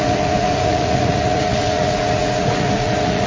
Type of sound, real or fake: fake